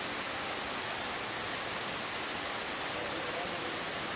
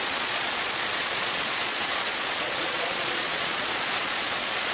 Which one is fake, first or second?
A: second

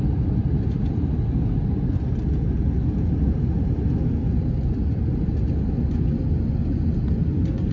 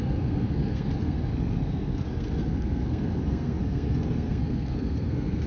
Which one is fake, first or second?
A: second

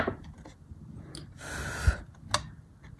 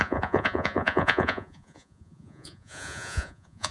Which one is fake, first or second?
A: second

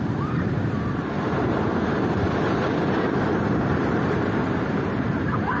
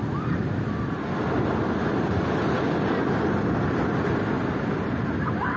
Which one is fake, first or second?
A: first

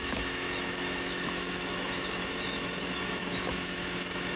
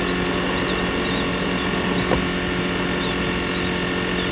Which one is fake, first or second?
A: first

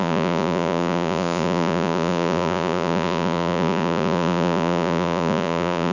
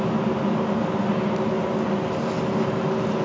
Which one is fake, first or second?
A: first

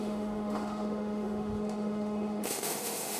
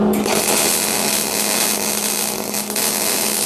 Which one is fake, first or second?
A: first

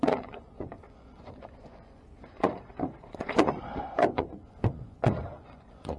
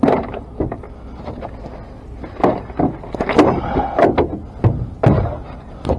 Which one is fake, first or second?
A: first